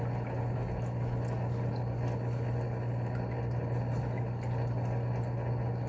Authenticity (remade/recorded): recorded